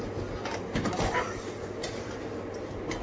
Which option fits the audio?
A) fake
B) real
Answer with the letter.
B